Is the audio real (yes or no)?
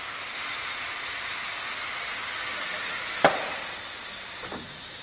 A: yes